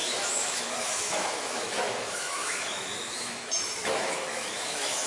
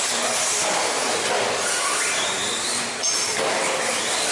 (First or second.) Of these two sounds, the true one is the second